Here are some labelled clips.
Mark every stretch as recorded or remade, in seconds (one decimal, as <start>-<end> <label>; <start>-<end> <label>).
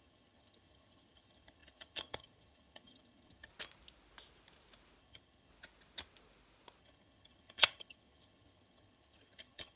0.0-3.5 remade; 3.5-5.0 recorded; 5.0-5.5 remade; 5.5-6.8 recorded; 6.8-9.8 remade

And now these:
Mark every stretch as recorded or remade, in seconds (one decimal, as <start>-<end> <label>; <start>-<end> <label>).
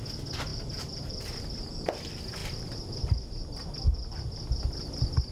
0.0-0.5 recorded; 0.5-2.0 remade; 2.0-2.4 recorded; 2.4-4.1 remade; 4.1-5.3 recorded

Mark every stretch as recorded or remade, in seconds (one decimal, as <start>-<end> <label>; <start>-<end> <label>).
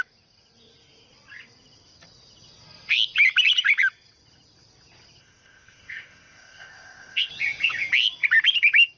0.0-5.2 recorded; 5.2-7.3 remade; 7.3-9.0 recorded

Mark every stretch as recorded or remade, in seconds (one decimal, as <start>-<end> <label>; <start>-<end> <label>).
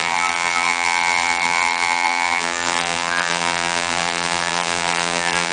0.0-5.5 remade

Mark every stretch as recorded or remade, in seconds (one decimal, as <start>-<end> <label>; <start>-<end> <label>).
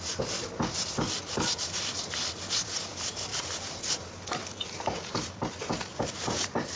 0.0-3.3 recorded; 3.3-4.3 remade; 4.3-6.8 recorded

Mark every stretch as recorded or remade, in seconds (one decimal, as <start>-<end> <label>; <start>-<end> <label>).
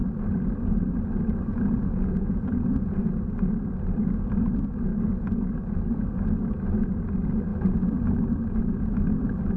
0.0-1.5 recorded; 1.5-3.0 remade; 3.0-9.6 recorded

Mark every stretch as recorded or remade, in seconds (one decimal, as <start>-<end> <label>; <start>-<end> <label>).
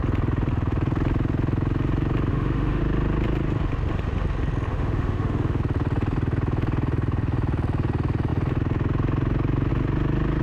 0.0-2.3 recorded; 2.3-2.8 remade; 2.8-4.7 recorded; 4.7-5.6 remade; 5.6-10.4 recorded